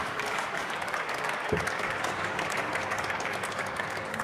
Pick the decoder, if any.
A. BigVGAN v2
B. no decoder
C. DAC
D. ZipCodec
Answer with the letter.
C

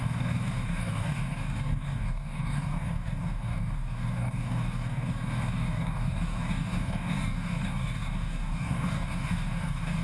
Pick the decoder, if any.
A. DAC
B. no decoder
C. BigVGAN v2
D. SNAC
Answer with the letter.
A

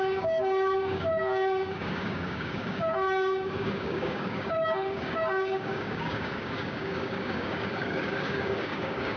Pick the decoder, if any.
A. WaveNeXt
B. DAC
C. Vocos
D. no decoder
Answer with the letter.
B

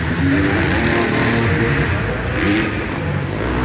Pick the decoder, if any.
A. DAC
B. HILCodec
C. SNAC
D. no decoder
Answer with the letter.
D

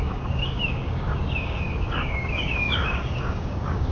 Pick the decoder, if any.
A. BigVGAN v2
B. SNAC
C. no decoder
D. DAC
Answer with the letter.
D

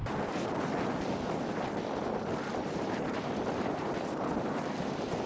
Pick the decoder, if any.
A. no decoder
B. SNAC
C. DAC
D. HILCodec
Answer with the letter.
A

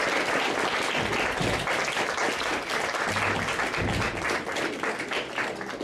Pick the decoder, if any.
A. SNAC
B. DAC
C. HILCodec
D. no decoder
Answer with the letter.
D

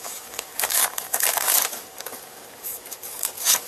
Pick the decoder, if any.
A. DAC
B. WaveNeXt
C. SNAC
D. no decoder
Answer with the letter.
A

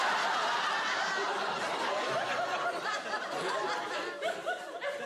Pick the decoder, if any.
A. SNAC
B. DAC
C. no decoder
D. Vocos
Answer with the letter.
C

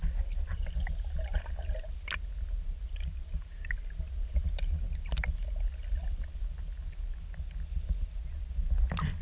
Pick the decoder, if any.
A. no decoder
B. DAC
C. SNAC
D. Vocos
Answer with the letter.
A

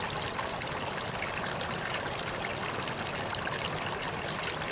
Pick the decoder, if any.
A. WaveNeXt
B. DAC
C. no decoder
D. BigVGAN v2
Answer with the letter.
C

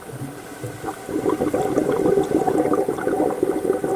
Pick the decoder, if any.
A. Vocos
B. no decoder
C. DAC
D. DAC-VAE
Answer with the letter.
B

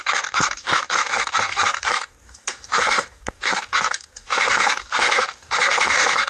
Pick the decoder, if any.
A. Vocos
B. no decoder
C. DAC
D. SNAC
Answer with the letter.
C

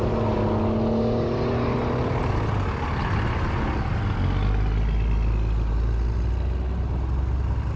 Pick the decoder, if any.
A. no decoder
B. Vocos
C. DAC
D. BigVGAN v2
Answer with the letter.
A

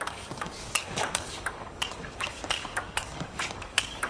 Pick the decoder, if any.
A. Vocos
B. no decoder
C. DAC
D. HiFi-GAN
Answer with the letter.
C